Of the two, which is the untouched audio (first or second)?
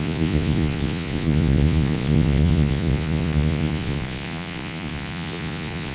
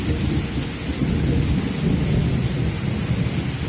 second